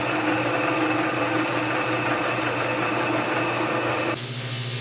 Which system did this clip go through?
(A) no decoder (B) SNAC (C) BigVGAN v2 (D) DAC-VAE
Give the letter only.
A